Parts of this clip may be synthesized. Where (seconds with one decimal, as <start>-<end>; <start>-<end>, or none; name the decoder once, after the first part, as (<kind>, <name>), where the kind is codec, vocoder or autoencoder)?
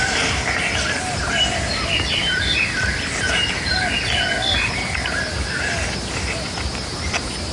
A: none